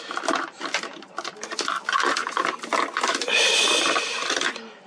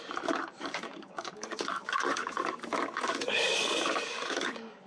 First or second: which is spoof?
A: second